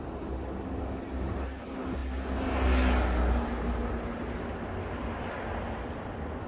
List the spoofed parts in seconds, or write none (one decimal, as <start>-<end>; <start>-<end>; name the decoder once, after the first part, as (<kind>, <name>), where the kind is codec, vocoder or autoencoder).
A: none